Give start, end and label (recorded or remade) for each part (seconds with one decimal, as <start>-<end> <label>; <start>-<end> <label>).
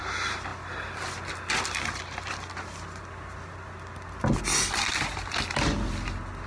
0.0-6.5 recorded